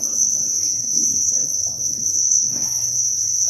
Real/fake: fake